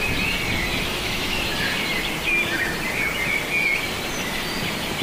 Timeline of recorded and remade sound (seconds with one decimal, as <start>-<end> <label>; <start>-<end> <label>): 0.0-0.7 recorded; 0.7-1.4 remade; 1.4-5.0 recorded